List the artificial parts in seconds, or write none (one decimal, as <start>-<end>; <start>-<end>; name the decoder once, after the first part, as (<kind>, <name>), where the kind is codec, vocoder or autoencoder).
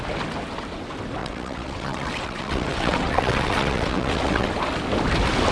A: 1.2-4.5 (vocoder, WaveNeXt)